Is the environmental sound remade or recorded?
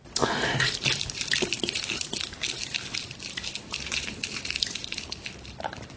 remade